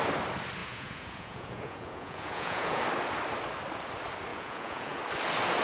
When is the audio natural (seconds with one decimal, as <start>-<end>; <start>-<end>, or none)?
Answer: 0.0-0.6; 2.8-4.3; 5.0-5.6